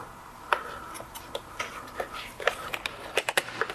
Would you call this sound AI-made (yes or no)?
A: yes